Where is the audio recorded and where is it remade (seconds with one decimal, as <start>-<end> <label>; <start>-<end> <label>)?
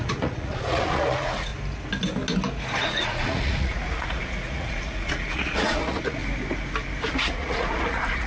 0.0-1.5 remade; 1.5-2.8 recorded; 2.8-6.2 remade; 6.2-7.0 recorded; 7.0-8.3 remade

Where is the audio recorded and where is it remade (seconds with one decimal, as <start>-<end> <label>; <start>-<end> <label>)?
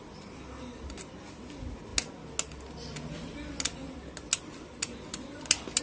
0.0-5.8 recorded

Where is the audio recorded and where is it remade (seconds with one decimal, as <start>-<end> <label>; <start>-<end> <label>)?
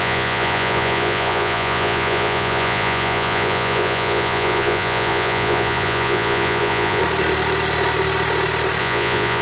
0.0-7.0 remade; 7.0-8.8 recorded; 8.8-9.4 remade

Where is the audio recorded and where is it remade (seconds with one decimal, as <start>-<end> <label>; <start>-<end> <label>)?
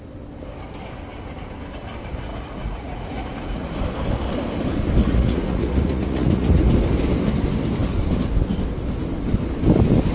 0.0-2.3 recorded; 2.3-3.7 remade; 3.7-5.0 recorded; 5.0-6.7 remade; 6.7-10.1 recorded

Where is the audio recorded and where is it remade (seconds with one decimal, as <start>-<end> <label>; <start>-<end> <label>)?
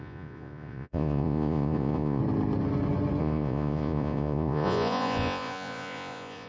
0.0-2.2 remade; 2.2-3.2 recorded; 3.2-6.5 remade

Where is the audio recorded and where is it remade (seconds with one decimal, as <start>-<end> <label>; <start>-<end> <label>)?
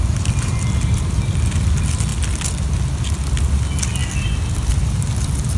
0.0-5.6 recorded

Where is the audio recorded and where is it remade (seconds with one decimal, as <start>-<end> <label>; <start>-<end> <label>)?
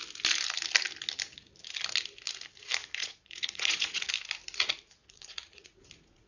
0.0-2.8 recorded; 2.8-4.1 remade; 4.1-5.0 recorded; 5.0-6.3 remade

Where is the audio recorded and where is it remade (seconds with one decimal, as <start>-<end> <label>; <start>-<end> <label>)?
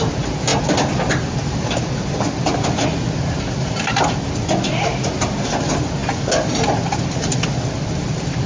0.0-8.5 recorded